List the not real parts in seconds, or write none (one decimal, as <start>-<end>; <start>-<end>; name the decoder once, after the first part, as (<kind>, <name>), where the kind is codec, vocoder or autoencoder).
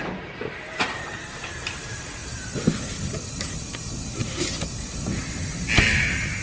0.0-2.2 (vocoder, BigVGAN v2); 6.0-6.4